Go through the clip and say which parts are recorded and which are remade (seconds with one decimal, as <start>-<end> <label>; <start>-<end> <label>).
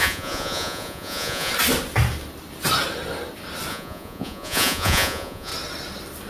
0.0-1.5 remade; 1.5-3.7 recorded; 3.7-5.5 remade; 5.5-6.3 recorded